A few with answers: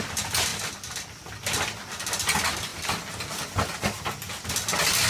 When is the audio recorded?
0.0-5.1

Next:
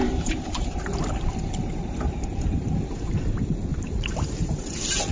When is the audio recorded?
3.1-3.7

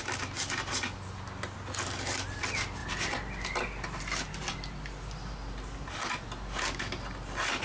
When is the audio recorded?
0.0-7.6

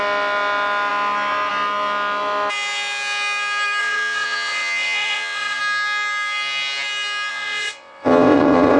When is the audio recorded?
0.0-3.8; 5.6-7.3